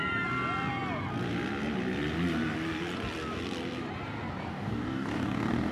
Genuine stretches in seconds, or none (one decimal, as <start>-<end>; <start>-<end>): 0.0-4.5

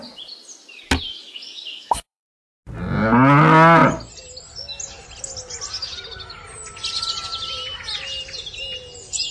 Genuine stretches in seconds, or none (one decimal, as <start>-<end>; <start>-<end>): 0.0-1.1; 2.4-9.3

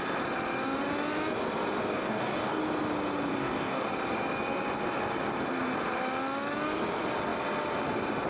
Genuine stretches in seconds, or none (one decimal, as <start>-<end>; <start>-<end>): 0.0-1.9; 2.6-3.3; 3.8-8.3

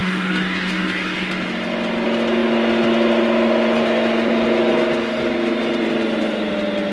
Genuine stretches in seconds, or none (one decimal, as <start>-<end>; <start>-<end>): 1.3-6.9